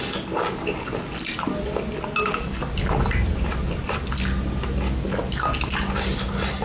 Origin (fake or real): real